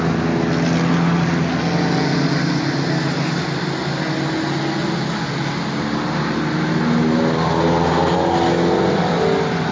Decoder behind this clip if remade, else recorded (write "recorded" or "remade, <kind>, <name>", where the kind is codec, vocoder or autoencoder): recorded